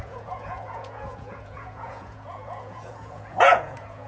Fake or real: fake